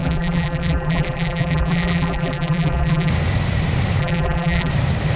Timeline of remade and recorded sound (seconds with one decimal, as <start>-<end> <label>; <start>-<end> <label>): 0.0-3.1 remade; 3.1-4.0 recorded; 4.0-4.7 remade; 4.7-5.2 recorded